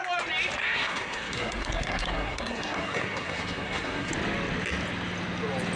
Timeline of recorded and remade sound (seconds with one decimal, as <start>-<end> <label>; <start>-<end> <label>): 0.0-0.6 recorded; 0.6-4.1 remade; 4.1-5.8 recorded